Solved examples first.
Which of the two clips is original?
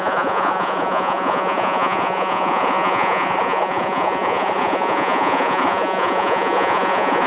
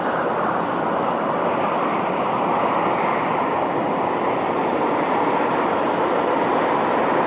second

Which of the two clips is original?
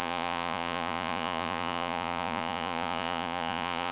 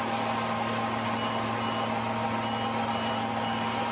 second